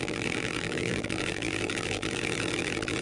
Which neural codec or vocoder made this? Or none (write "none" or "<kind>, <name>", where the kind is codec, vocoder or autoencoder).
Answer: vocoder, BigVGAN v2